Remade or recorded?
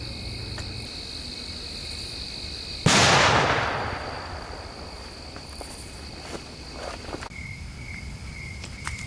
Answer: recorded